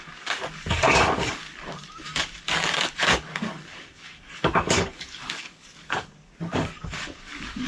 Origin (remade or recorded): remade